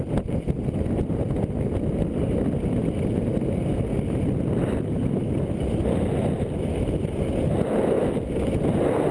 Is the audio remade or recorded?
recorded